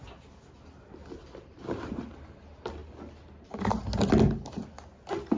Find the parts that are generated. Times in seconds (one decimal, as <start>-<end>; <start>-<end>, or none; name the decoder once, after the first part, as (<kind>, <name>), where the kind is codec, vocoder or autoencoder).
none